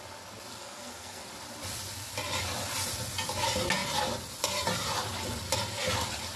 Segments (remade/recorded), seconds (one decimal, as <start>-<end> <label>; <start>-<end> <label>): 0.0-0.5 recorded; 0.5-1.3 remade; 1.3-6.4 recorded